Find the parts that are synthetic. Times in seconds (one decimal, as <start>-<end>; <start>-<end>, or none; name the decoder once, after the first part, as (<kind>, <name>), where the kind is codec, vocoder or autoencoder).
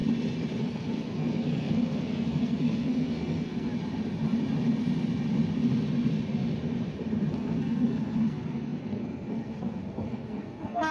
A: 0.6-3.7 (codec, SNAC); 7.3-10.9